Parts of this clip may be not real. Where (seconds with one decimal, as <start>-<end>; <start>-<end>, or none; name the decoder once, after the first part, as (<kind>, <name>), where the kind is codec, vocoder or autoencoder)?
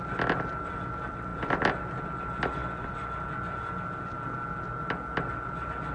none